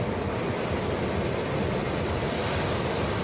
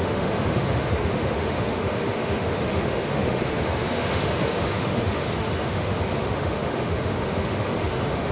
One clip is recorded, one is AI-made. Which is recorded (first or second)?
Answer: first